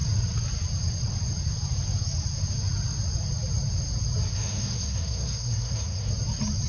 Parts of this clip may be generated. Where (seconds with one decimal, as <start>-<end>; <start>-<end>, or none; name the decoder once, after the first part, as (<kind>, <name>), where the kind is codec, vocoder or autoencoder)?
4.3-6.1 (codec, SNAC)